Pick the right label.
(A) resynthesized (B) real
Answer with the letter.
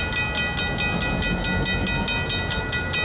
B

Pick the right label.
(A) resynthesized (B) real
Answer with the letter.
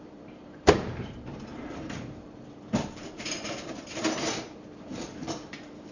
A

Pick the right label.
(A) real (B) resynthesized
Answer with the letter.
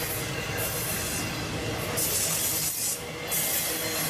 A